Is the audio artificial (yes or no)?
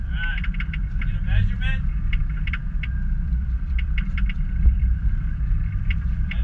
yes